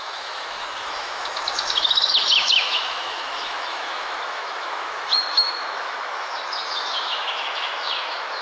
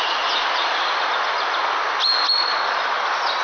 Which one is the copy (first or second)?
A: first